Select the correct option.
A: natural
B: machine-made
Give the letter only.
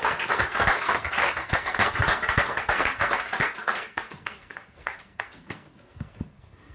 B